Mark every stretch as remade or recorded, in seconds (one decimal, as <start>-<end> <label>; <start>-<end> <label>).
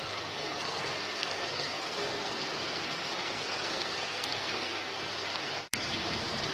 0.0-6.5 remade